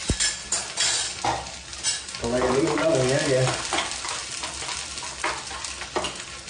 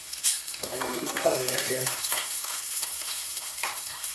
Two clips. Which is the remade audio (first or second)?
second